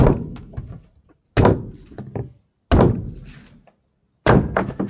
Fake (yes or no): no